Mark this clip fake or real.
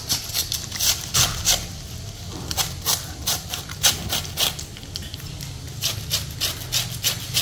real